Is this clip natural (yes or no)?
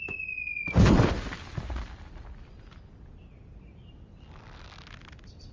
yes